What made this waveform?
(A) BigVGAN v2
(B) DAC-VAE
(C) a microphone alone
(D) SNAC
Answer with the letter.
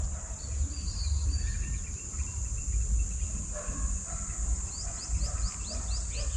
C